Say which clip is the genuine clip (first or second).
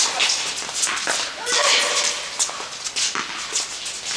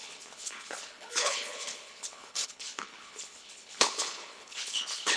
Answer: first